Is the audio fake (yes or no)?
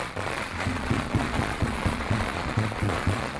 yes